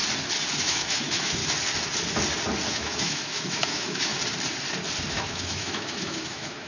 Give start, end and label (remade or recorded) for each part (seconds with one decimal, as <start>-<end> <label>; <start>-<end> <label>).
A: 0.0-0.5 recorded; 0.5-1.4 remade; 1.4-2.7 recorded; 2.7-4.1 remade; 4.1-5.1 recorded; 5.1-6.7 remade